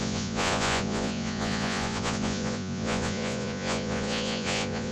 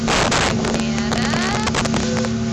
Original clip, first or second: second